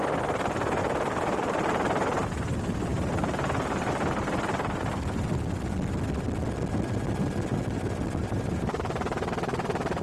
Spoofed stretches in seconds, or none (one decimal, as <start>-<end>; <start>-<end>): 0.8-3.9; 8.2-9.3